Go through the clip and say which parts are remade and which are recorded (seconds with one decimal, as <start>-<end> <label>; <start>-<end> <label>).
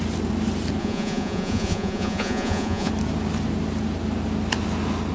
0.0-0.8 recorded; 0.8-2.9 remade; 2.9-5.1 recorded